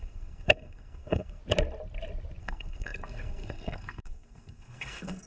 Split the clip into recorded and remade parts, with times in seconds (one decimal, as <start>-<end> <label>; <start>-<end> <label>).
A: 0.0-1.4 remade; 1.4-2.4 recorded; 2.4-5.3 remade